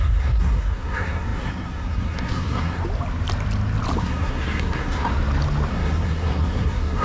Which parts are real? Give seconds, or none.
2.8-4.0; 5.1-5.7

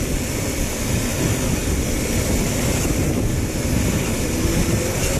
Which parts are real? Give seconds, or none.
0.0-5.2

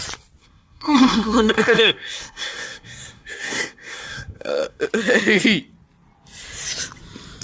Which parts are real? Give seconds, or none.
0.0-0.4; 4.8-7.4

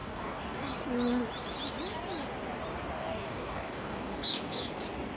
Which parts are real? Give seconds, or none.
0.7-3.0; 4.7-5.2